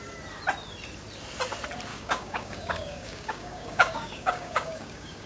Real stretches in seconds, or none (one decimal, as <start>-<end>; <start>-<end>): 0.0-1.9